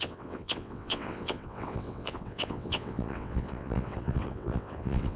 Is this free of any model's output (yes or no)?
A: no